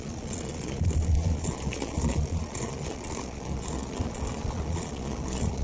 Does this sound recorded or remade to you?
remade